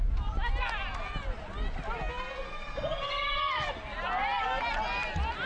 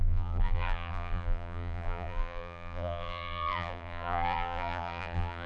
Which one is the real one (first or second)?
first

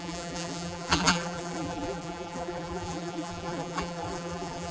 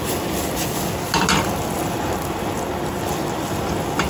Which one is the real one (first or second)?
second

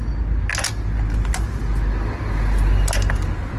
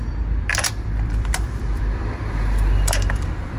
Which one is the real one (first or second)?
first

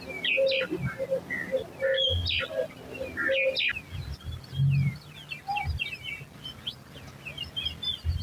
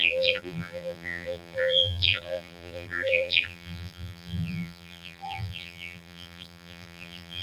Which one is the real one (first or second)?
first